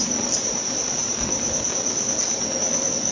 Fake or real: real